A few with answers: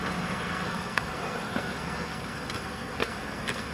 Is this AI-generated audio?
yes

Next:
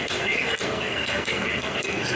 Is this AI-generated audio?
yes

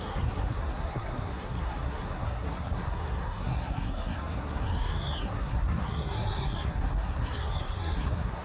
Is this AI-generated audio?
yes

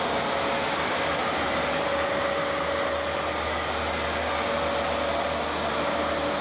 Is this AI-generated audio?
no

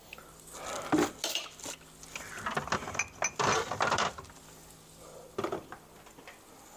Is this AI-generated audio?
no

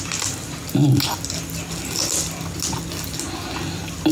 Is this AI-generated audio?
no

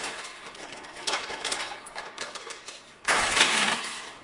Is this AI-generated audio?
yes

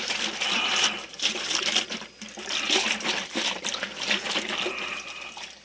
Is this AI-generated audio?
no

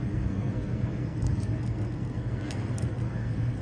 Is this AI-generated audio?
yes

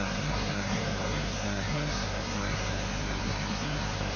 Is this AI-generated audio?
yes